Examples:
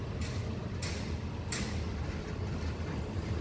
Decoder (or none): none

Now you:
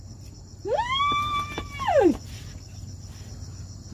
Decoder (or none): none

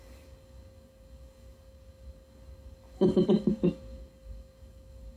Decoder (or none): codec, DAC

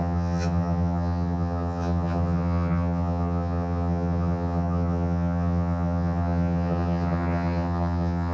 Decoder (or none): vocoder, HiFi-GAN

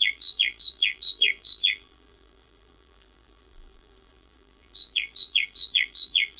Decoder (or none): vocoder, BigVGAN v2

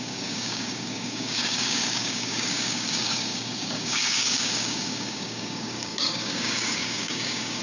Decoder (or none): codec, DAC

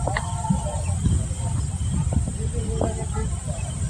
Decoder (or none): none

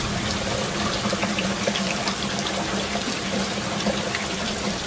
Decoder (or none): vocoder, BigVGAN v2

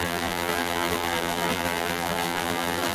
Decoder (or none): vocoder, BigVGAN v2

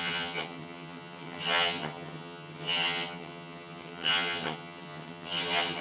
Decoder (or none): vocoder, HiFi-GAN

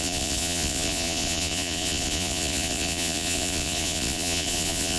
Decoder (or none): vocoder, Vocos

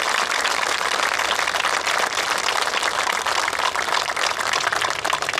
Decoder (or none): none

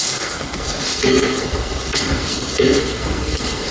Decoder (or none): codec, SNAC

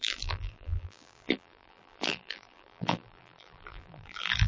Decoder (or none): vocoder, BigVGAN v2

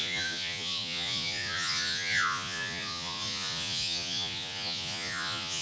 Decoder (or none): vocoder, Vocos